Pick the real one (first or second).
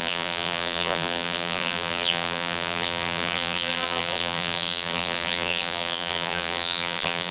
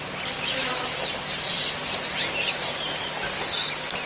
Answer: second